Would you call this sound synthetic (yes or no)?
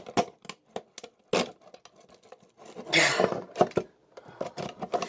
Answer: no